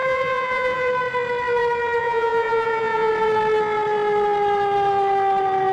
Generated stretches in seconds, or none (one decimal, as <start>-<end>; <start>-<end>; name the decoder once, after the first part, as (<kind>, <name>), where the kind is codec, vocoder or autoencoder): 0.0-0.9 (vocoder, Vocos); 2.0-3.1